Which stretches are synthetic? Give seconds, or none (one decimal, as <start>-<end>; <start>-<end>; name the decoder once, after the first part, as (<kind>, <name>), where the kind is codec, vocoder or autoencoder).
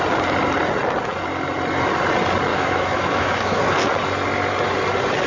2.5-3.6 (autoencoder, DAC-VAE)